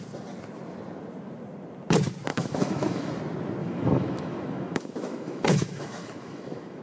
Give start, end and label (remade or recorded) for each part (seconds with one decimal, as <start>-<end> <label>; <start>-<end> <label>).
0.0-2.3 recorded; 2.3-3.2 remade; 3.2-3.6 recorded; 3.6-6.8 remade